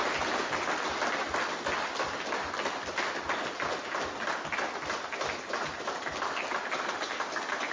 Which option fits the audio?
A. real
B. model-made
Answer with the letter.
A